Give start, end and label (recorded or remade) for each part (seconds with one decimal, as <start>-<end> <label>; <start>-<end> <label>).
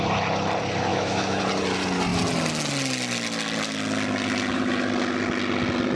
0.0-0.9 recorded; 0.9-1.4 remade; 1.4-5.9 recorded